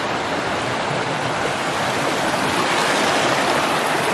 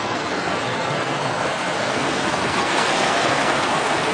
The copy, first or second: second